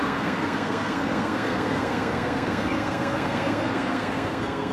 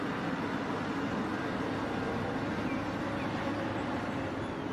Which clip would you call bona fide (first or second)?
second